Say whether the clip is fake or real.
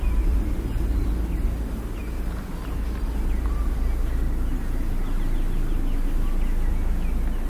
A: real